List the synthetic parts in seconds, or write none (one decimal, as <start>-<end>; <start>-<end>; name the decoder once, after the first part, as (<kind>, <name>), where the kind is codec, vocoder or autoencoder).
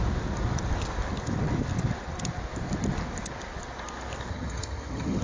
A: 4.3-5.2 (vocoder, HiFi-GAN)